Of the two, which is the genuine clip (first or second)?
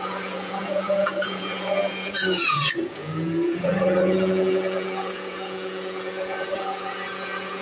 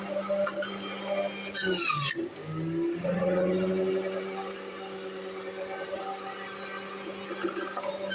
second